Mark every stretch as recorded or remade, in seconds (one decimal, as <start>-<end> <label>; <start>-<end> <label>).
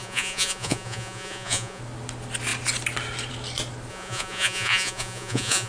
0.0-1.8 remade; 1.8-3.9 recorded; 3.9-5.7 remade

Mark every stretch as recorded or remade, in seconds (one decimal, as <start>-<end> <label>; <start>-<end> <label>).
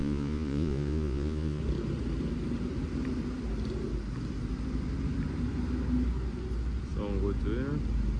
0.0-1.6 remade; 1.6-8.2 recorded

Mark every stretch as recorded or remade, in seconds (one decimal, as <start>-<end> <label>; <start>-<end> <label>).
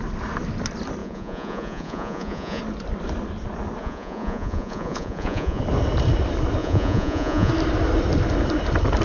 0.0-1.0 recorded; 1.0-2.6 remade; 2.6-3.8 recorded; 3.8-5.6 remade; 5.6-6.6 recorded; 6.6-7.5 remade; 7.5-9.0 recorded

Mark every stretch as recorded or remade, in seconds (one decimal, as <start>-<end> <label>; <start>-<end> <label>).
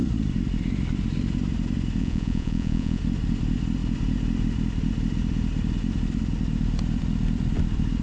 0.0-2.0 recorded; 2.0-3.0 remade; 3.0-8.0 recorded